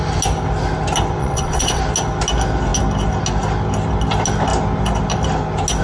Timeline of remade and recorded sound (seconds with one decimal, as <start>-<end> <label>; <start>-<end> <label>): 0.0-1.2 recorded; 1.2-1.8 remade; 1.8-5.8 recorded